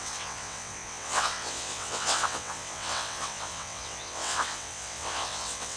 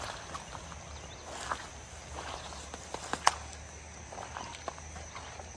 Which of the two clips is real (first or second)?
second